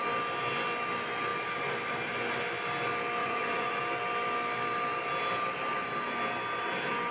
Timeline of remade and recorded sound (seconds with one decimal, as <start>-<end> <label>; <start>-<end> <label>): 0.0-3.2 recorded; 3.2-3.8 remade; 3.8-7.1 recorded